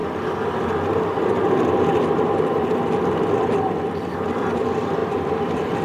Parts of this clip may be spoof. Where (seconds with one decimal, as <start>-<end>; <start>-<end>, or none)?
2.0-5.8

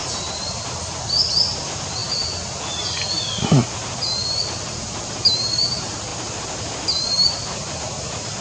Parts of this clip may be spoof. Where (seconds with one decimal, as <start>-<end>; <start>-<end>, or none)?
none

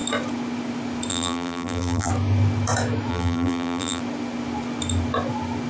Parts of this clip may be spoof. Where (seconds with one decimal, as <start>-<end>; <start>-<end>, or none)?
1.1-2.1; 3.1-4.0

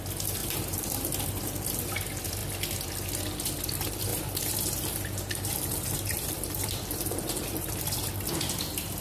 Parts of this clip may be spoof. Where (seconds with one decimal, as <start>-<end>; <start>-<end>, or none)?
0.4-0.9; 4.1-7.7

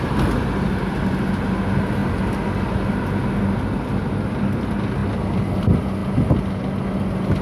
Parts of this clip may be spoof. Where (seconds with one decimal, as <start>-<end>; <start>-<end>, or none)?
none

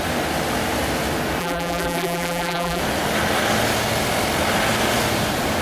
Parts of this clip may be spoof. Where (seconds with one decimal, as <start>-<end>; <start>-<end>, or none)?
1.4-2.8